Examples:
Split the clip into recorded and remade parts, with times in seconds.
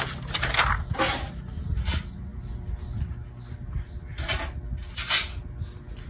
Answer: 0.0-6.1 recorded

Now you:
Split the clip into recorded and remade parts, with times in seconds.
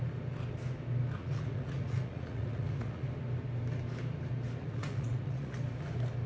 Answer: 0.0-1.2 recorded; 1.2-3.1 remade; 3.1-4.6 recorded; 4.6-5.6 remade; 5.6-6.3 recorded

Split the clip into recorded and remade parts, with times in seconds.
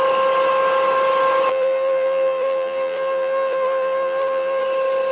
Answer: 0.0-1.5 recorded; 1.5-4.6 remade; 4.6-5.1 recorded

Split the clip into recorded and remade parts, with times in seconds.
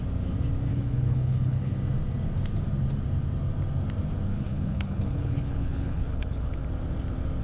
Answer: 0.0-0.7 recorded; 0.7-1.7 remade; 1.7-4.3 recorded; 4.3-6.6 remade; 6.6-7.4 recorded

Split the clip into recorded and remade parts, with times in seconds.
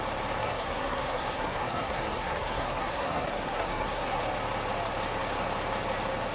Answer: 0.0-0.4 recorded; 0.4-4.2 remade; 4.2-6.3 recorded